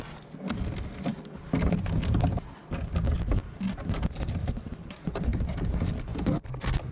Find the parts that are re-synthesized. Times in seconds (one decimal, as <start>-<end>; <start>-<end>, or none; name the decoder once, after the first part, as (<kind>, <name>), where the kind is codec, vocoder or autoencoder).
none